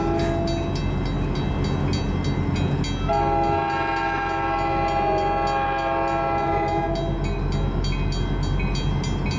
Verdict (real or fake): real